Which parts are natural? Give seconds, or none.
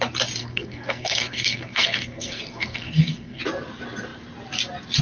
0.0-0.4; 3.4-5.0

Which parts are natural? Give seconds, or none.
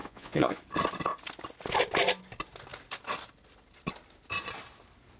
0.6-5.2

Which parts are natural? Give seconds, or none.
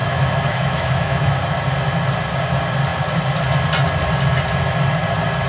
1.4-5.5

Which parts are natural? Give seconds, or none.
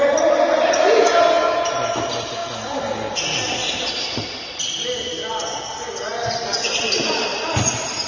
0.0-8.1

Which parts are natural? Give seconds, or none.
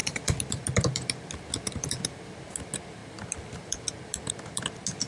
2.3-3.0; 4.6-5.1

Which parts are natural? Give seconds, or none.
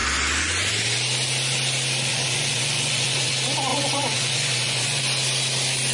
0.0-2.1; 3.3-3.7; 5.0-5.9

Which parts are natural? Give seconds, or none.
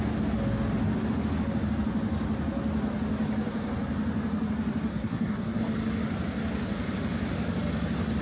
0.0-4.9; 5.6-8.2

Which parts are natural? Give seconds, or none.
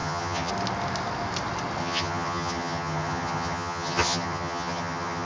0.5-1.8